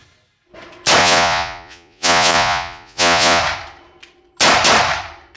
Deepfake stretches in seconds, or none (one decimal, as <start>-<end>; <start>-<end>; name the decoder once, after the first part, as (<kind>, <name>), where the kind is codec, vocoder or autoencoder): 1.0-3.4 (vocoder, Vocos)